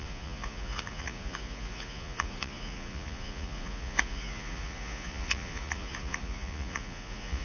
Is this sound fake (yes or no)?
yes